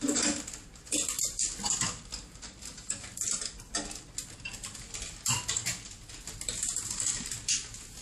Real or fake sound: real